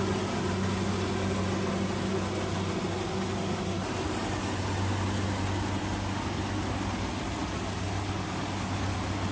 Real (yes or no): yes